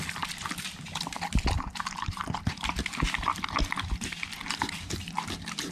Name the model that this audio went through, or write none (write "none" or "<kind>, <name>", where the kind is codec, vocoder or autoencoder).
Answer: none